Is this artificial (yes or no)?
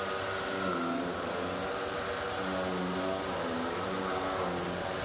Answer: no